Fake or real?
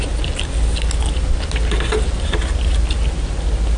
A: real